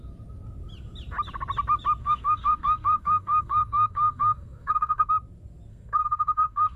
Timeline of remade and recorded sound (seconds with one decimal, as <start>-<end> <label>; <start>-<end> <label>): 0.0-2.0 recorded; 2.0-5.1 remade; 5.1-5.7 recorded; 5.7-6.8 remade